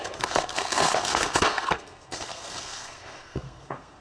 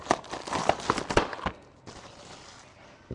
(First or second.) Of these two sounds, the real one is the second